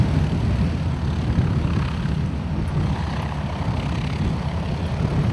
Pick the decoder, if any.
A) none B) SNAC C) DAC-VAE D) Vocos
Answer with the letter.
A